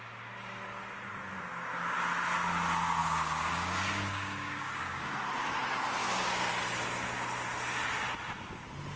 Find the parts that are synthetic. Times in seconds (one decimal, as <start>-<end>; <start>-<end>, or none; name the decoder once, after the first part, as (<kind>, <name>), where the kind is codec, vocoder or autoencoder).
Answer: 3.0-5.2 (codec, DAC); 6.0-6.5